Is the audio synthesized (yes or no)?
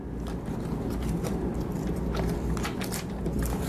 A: no